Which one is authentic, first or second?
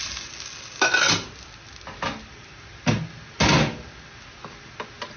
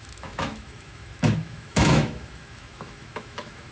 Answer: first